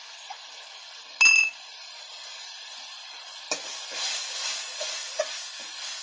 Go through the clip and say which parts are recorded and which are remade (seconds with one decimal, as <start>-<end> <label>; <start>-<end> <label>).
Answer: 0.0-4.1 recorded; 4.1-5.5 remade; 5.5-6.0 recorded